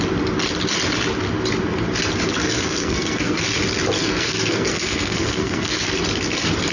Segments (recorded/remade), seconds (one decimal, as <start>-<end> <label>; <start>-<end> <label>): 0.0-2.4 recorded; 2.4-3.4 remade; 3.4-4.0 recorded; 4.0-6.0 remade; 6.0-6.7 recorded